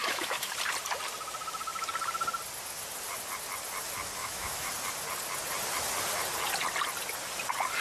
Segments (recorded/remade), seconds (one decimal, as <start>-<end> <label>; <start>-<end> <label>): 0.0-0.5 remade; 0.5-4.2 recorded; 4.2-4.7 remade; 4.7-7.8 recorded